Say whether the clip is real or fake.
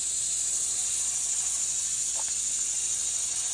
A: real